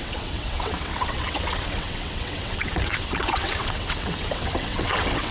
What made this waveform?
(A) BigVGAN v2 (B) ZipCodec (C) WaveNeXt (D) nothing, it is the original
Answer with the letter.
C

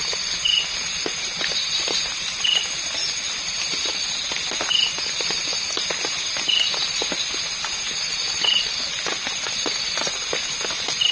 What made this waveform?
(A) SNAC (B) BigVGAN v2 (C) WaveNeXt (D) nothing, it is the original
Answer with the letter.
D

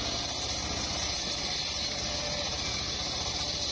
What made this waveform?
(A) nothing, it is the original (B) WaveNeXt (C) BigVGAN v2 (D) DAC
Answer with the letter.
A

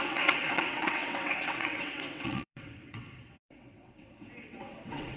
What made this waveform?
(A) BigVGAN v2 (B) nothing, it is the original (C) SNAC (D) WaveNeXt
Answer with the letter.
D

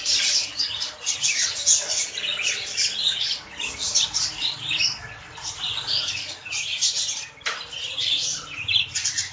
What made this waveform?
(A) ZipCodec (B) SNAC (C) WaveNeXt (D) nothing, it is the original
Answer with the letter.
D